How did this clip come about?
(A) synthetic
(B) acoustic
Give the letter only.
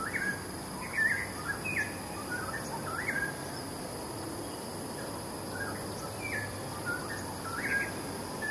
B